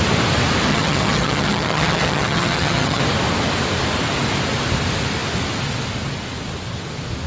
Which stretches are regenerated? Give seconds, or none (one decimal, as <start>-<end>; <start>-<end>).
0.7-3.0